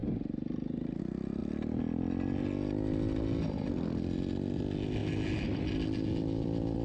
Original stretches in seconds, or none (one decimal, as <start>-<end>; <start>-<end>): 0.0-6.8